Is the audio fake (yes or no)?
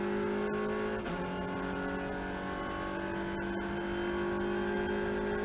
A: no